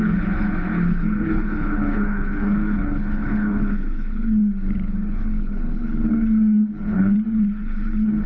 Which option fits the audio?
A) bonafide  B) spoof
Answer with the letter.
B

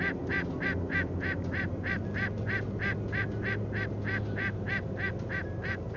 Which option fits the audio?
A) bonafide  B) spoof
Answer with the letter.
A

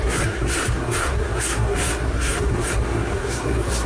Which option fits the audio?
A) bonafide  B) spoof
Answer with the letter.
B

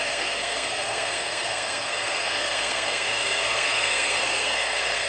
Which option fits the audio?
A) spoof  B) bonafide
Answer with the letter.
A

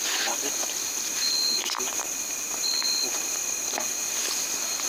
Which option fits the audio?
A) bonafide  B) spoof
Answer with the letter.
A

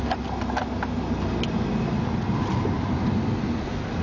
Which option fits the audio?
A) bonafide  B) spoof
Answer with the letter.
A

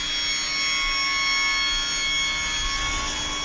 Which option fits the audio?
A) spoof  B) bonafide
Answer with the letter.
B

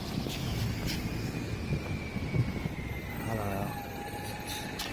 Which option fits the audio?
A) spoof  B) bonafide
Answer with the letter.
B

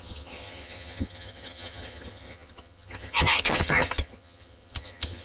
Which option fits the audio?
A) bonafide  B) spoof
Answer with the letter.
B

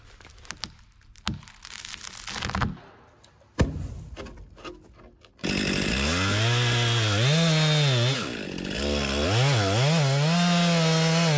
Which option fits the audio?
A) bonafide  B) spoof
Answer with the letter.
A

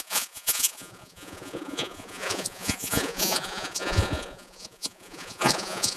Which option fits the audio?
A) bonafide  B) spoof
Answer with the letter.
B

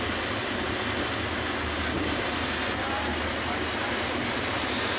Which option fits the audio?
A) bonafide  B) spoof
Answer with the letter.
A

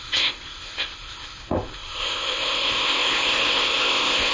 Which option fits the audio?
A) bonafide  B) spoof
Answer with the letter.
B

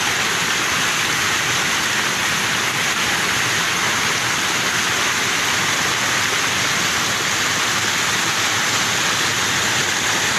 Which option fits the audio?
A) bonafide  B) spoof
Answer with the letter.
A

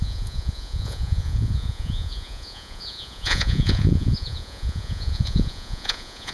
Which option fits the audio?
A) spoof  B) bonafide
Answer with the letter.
A